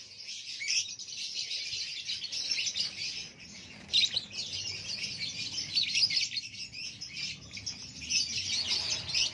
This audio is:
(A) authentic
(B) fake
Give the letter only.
A